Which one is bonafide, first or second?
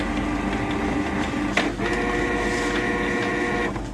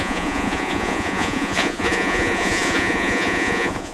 first